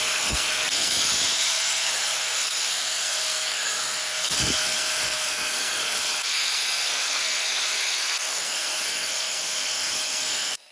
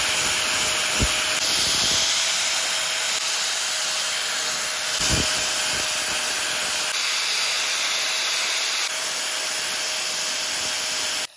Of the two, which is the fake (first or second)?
first